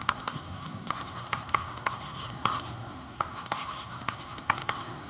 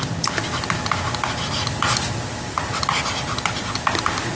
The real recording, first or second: second